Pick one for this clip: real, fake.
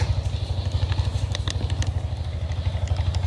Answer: real